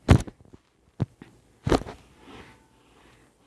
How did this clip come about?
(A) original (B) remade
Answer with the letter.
A